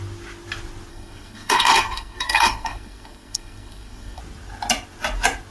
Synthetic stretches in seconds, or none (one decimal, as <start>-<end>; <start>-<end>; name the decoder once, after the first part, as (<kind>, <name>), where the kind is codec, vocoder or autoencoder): 0.9-4.2 (codec, SNAC)